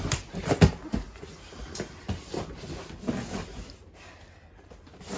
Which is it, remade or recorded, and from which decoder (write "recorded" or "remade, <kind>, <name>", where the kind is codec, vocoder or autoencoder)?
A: recorded